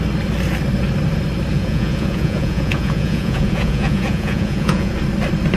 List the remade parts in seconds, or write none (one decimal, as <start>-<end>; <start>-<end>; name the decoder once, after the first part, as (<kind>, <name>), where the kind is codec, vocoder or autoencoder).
1.5-4.9 (vocoder, Vocos)